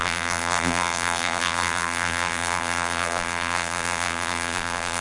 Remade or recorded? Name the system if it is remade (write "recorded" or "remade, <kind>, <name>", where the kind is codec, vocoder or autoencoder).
remade, vocoder, BigVGAN v2